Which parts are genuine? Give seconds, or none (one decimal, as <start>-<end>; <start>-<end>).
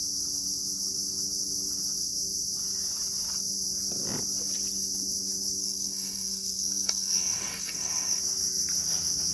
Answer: 0.0-5.6; 8.2-9.3